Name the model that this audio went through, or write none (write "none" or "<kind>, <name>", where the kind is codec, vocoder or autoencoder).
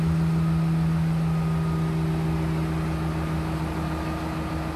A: none